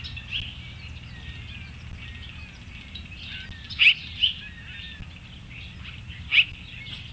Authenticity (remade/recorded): recorded